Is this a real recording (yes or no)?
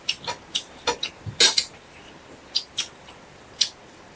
yes